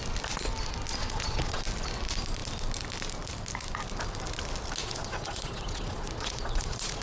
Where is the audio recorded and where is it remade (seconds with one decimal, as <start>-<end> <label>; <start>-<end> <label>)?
0.0-1.0 recorded; 1.0-1.6 remade; 1.6-4.8 recorded; 4.8-7.0 remade